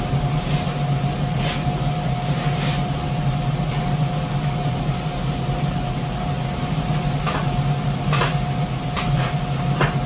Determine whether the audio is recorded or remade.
recorded